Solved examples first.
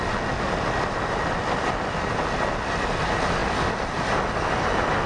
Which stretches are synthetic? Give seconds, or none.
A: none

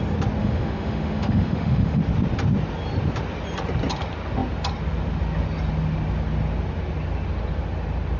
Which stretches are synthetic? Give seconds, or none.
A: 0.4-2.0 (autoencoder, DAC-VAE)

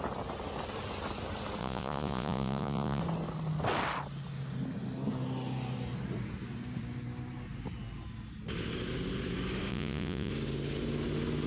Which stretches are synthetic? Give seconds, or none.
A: 1.6-3.0 (vocoder, Vocos); 9.7-10.3

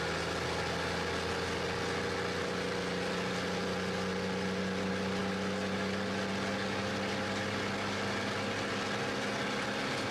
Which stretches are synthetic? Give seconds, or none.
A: none

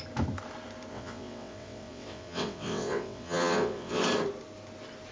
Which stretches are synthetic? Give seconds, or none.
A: 0.9-4.0 (vocoder, WaveNeXt)

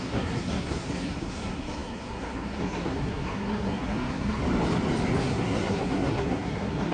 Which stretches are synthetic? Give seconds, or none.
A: 0.0-4.4 (codec, SNAC); 5.2-6.9